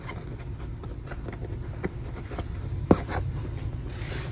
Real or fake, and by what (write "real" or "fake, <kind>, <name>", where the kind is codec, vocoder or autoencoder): real